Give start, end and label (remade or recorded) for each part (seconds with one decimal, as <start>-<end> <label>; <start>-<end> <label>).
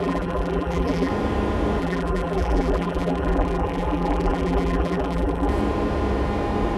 0.0-1.1 remade; 1.1-1.8 recorded; 1.8-5.5 remade; 5.5-6.8 recorded